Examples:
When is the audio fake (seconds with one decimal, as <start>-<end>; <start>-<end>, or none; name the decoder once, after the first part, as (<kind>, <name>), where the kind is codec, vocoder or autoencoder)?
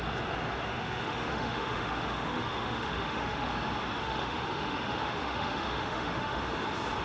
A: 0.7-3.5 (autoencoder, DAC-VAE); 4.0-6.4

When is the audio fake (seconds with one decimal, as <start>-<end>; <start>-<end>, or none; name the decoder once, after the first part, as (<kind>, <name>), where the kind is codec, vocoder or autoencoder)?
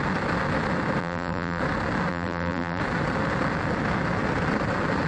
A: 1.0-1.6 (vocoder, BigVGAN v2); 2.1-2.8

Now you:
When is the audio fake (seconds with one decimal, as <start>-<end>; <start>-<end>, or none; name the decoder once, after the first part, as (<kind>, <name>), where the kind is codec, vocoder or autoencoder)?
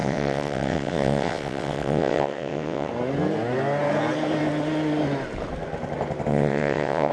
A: 0.0-2.9 (vocoder, WaveNeXt); 6.3-7.1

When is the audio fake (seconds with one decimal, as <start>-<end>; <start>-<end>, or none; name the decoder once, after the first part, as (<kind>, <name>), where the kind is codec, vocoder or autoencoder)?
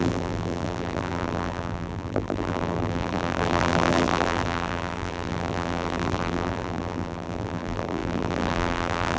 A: 0.0-9.2 (vocoder, BigVGAN v2)